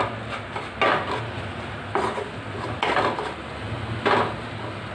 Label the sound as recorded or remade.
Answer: recorded